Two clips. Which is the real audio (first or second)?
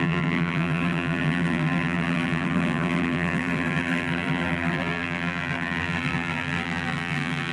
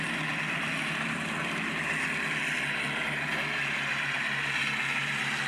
second